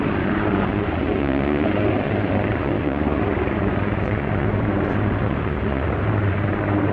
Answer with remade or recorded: remade